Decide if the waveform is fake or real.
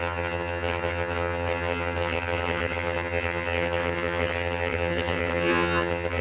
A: fake